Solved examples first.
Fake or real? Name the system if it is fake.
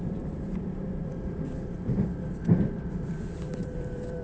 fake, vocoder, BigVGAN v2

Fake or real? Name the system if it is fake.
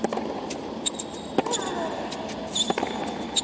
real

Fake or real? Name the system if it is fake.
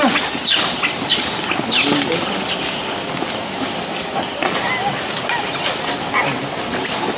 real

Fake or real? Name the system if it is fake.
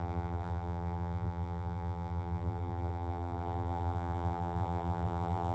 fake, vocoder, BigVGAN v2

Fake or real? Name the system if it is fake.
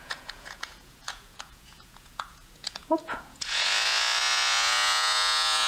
fake, vocoder, Vocos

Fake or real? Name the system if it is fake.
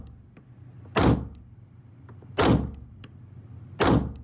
real